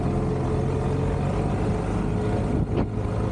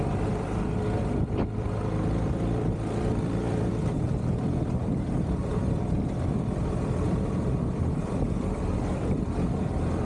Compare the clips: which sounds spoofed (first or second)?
second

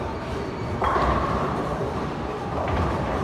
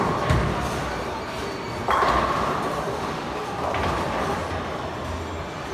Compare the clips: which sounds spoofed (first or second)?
first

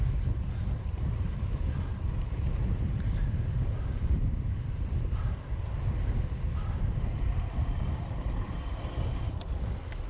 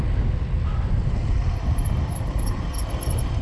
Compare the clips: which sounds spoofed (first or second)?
first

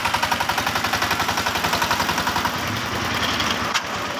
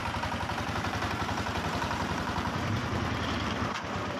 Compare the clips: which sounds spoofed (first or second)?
second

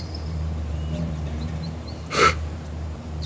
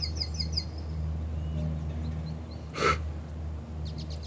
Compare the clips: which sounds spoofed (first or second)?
first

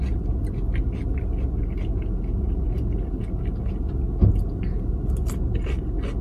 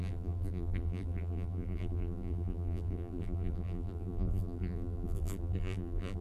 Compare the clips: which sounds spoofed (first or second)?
second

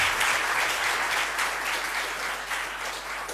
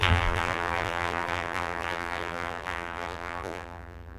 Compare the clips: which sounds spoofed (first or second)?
second